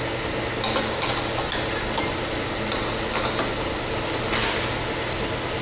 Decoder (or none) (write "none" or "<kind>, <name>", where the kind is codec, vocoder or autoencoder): none